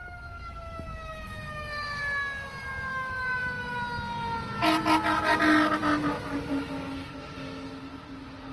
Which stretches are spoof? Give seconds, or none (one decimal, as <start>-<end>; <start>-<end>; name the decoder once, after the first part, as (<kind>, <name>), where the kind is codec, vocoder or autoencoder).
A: 0.0-2.0 (autoencoder, DAC-VAE); 2.9-3.8